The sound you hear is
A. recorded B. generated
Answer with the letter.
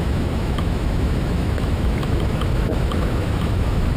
B